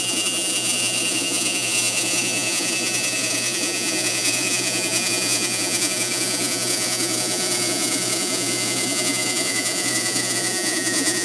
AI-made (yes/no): yes